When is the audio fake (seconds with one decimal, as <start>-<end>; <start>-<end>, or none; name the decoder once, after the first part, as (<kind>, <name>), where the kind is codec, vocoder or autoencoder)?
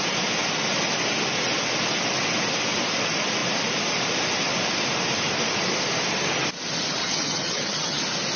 7.0-8.0 (vocoder, HiFi-GAN)